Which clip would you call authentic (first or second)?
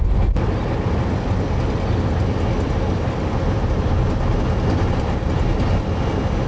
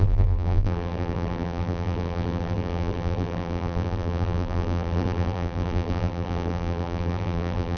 first